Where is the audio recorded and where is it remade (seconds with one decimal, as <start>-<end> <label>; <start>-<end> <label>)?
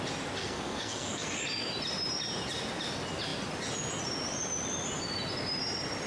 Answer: 0.0-0.4 recorded; 0.4-1.4 remade; 1.4-6.1 recorded